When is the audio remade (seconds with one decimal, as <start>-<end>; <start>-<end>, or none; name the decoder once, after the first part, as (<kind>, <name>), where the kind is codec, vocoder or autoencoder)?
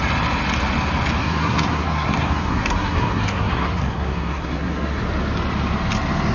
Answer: 1.2-5.0 (codec, SNAC)